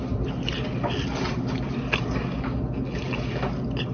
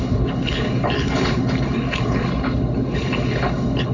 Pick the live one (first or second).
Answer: first